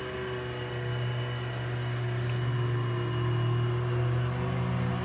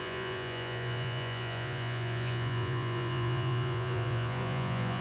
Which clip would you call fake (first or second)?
second